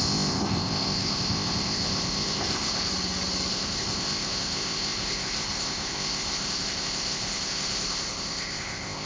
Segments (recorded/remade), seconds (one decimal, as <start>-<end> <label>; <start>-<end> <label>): 0.0-2.9 remade; 2.9-3.5 recorded; 3.5-9.1 remade